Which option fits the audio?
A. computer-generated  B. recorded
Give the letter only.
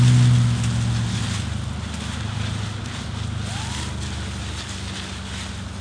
B